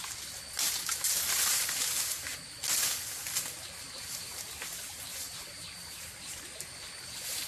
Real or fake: real